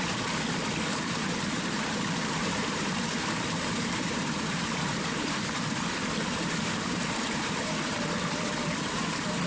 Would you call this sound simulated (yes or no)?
yes